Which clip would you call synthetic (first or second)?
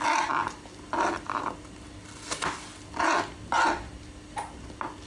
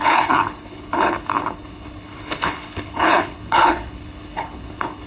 second